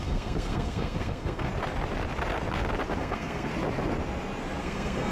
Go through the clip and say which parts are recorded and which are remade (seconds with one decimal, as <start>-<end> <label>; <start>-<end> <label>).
0.0-1.5 remade; 1.5-3.0 recorded; 3.0-3.5 remade; 3.5-4.6 recorded; 4.6-5.1 remade